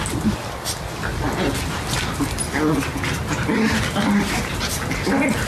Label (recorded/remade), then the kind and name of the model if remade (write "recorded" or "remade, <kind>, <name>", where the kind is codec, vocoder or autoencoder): recorded